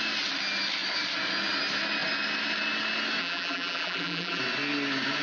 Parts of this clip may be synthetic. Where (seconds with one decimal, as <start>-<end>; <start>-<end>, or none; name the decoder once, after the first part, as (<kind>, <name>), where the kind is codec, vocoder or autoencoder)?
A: 3.2-4.4 (vocoder, BigVGAN v2)